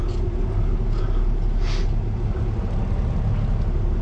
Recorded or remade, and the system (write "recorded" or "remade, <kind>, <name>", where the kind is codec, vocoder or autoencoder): recorded